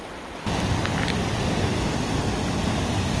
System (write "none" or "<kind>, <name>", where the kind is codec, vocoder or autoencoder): none